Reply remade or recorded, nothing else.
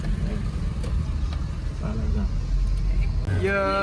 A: recorded